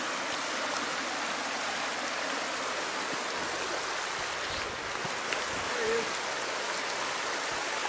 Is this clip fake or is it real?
real